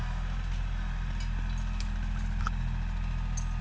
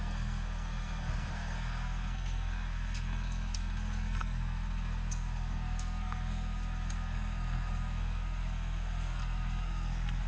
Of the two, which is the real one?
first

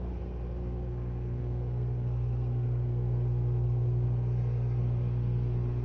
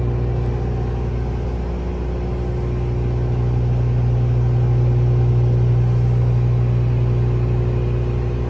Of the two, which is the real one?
second